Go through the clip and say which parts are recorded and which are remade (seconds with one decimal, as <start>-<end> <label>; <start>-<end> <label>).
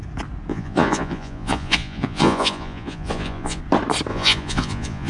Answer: 0.0-0.5 recorded; 0.5-3.6 remade; 3.6-4.1 recorded; 4.1-5.1 remade